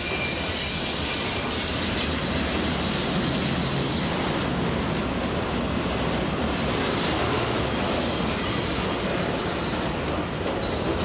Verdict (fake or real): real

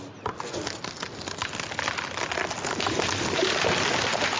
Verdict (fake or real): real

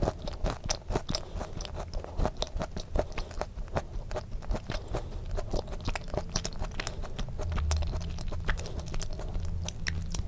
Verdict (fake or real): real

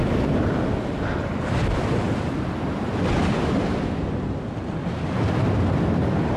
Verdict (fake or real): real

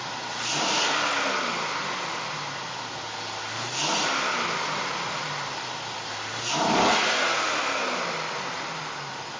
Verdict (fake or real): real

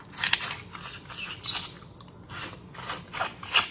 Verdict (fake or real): real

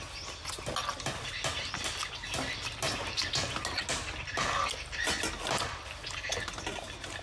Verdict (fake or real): real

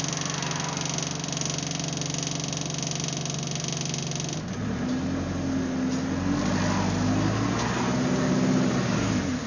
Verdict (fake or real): real